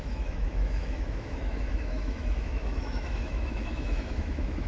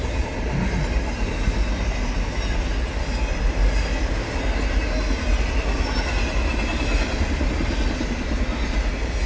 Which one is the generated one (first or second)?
first